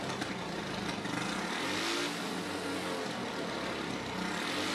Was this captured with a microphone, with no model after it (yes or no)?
yes